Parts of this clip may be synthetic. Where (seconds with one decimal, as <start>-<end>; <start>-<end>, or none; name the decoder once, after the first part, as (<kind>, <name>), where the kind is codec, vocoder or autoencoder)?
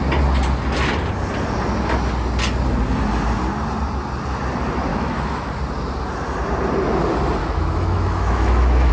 4.9-5.5 (autoencoder, DAC-VAE); 7.4-8.9